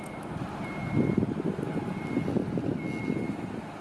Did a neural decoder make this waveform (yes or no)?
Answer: no